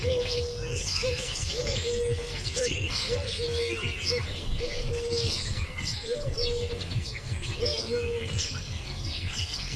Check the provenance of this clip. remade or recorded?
remade